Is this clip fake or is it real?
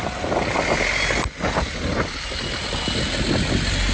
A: real